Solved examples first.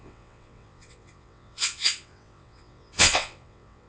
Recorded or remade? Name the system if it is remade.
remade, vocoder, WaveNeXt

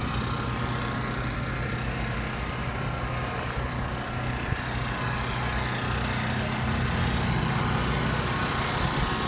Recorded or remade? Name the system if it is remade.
recorded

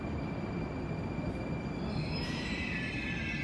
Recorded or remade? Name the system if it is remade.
recorded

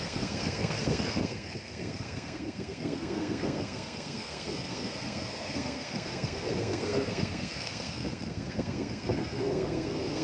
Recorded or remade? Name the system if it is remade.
remade, codec, SNAC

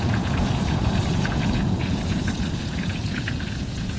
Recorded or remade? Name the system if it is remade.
remade, vocoder, Vocos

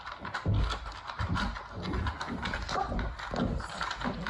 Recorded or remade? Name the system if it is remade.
recorded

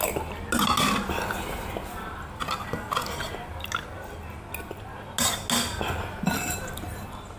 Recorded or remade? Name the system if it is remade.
recorded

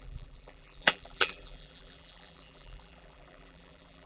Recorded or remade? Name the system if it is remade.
remade, vocoder, BigVGAN v2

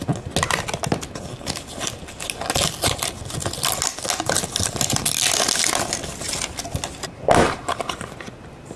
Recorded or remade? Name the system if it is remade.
recorded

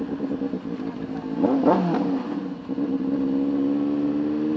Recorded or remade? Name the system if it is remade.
recorded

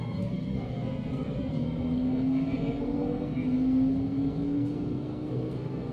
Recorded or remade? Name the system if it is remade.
remade, codec, SNAC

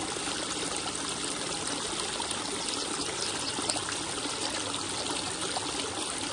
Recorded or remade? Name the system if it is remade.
recorded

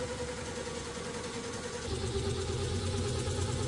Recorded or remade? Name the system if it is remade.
remade, vocoder, Vocos